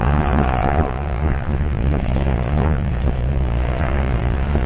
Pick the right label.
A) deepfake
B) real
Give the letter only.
A